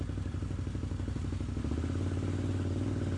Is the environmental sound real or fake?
real